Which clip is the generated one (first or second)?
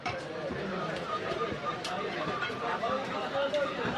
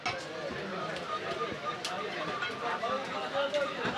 first